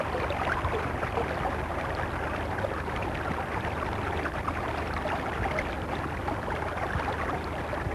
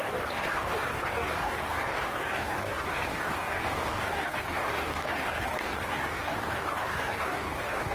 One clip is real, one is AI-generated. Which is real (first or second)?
first